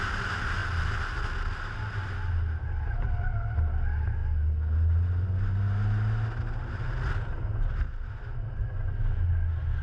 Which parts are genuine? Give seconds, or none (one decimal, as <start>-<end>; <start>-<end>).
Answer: 0.0-9.8